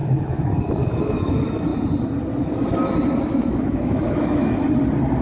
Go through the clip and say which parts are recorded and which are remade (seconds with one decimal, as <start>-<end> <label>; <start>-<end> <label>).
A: 0.0-1.7 remade; 1.7-3.2 recorded; 3.2-4.6 remade; 4.6-5.2 recorded